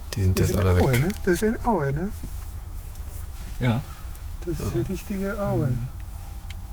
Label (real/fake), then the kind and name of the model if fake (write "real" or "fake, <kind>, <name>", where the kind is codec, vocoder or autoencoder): fake, autoencoder, DAC-VAE